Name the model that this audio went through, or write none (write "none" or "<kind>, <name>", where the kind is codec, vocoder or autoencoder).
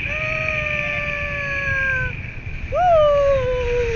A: none